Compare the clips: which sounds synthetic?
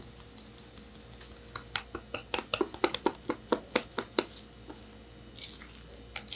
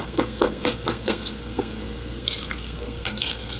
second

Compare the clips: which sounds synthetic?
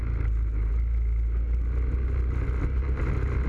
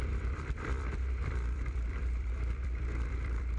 second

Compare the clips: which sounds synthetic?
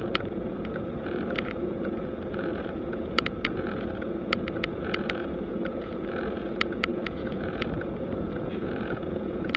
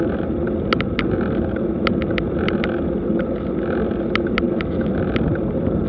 first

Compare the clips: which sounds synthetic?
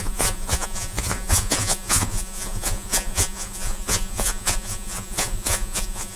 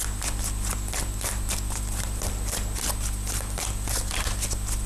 first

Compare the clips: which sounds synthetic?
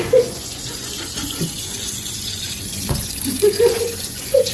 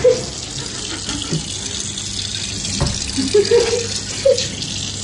first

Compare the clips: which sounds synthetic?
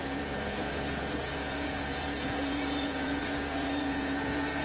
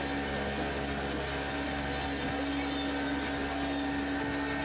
first